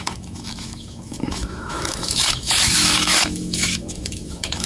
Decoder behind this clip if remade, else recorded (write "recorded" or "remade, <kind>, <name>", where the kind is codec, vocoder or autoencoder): remade, autoencoder, DAC-VAE